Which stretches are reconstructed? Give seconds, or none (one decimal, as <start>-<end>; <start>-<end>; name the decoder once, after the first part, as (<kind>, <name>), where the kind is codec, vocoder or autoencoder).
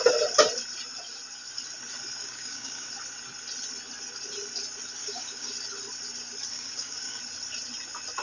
2.2-2.9 (codec, DAC); 5.0-5.5; 6.5-7.2